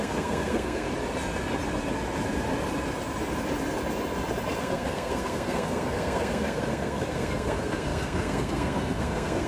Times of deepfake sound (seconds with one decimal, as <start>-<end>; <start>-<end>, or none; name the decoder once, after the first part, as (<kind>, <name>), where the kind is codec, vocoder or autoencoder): 0.0-0.9 (codec, SNAC); 4.6-9.5